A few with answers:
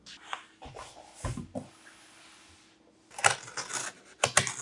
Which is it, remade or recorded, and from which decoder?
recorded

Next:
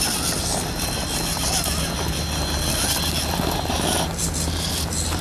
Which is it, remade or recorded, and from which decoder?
recorded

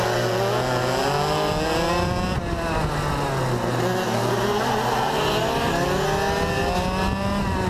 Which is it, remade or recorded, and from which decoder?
recorded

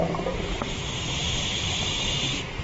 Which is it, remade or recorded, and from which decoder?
remade, vocoder, BigVGAN v2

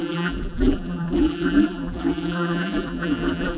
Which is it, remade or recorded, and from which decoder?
remade, vocoder, BigVGAN v2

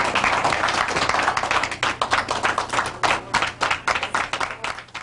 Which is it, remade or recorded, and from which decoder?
recorded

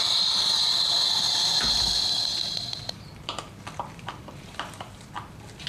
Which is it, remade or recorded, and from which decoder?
remade, vocoder, BigVGAN v2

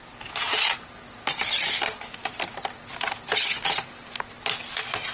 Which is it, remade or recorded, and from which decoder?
recorded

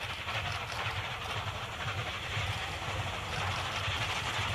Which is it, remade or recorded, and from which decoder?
recorded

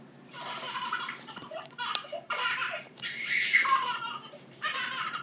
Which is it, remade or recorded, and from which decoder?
remade, vocoder, BigVGAN v2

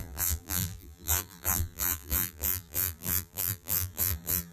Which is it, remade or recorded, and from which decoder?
remade, vocoder, BigVGAN v2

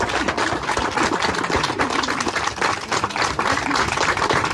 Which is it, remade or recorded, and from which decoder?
remade, vocoder, BigVGAN v2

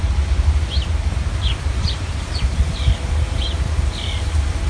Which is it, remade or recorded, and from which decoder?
remade, vocoder, BigVGAN v2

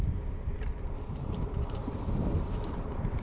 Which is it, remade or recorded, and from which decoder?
remade, vocoder, BigVGAN v2